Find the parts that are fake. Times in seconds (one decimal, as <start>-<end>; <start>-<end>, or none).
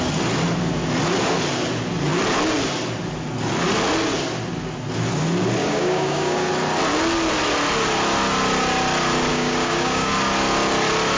5.6-6.5; 9.3-10.1